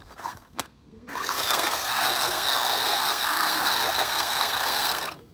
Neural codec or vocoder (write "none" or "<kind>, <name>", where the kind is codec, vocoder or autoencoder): codec, SNAC